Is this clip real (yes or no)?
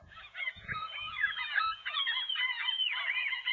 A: no